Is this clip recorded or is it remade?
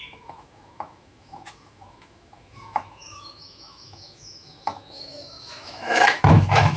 remade